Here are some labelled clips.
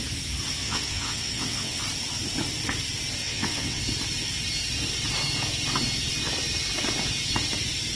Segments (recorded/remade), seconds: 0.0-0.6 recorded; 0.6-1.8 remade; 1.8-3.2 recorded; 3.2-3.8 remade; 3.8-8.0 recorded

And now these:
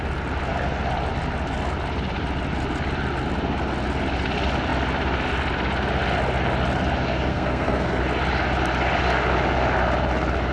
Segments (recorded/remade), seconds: 0.0-7.3 recorded; 7.3-8.0 remade; 8.0-10.5 recorded

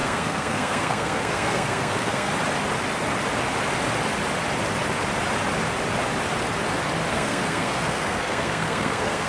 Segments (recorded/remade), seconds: 0.0-2.3 remade; 2.3-7.1 recorded; 7.1-9.3 remade

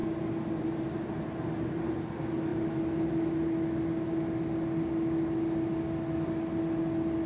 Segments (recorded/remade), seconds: 0.0-7.3 recorded